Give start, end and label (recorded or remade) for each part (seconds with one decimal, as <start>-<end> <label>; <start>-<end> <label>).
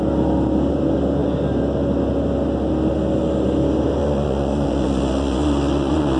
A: 0.0-4.0 recorded; 4.0-6.2 remade